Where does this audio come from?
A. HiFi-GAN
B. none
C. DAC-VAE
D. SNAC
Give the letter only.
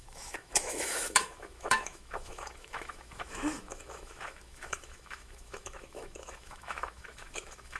C